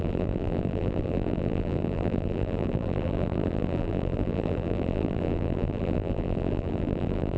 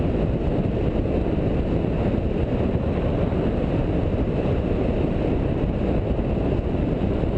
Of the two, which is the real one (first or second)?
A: second